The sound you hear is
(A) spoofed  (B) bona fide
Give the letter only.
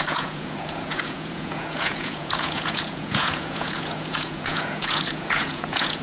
A